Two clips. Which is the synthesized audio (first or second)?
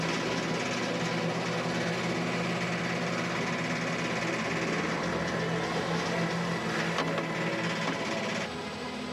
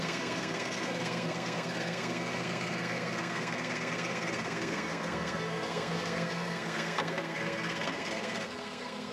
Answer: second